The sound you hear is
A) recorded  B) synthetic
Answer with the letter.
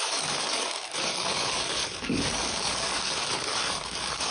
B